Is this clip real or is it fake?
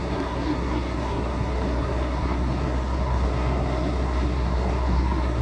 fake